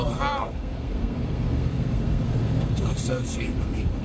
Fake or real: fake